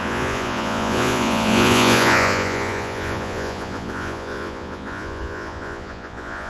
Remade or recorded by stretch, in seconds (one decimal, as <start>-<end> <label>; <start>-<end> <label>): 0.0-6.5 remade